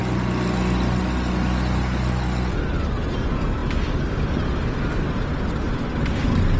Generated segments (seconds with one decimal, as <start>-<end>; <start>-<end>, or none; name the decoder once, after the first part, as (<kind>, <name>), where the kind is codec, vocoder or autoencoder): none